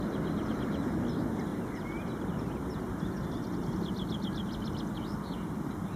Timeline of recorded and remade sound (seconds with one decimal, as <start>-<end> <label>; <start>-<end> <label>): 0.0-1.5 remade; 1.5-2.4 recorded; 2.4-6.0 remade